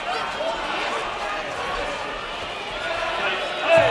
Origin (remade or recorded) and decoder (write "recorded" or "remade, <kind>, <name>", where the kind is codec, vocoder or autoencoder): recorded